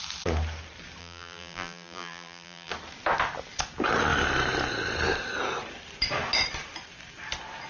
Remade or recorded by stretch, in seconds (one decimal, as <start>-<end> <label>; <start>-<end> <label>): 0.0-1.0 recorded; 1.0-2.7 remade; 2.7-7.7 recorded